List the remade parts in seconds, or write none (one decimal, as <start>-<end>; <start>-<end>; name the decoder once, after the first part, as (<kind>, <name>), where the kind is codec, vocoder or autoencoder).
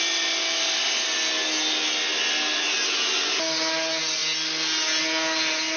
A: none